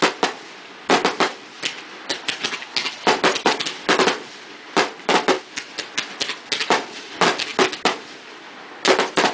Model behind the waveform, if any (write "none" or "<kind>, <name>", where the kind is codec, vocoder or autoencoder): none